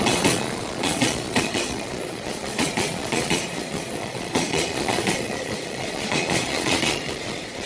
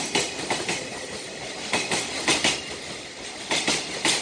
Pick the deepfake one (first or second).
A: first